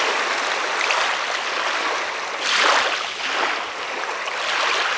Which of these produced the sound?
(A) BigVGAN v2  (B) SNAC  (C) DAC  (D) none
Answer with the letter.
D